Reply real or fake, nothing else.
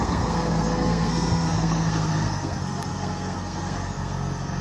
fake